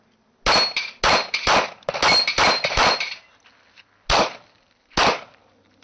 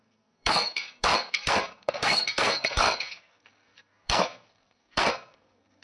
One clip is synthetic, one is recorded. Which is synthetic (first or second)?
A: second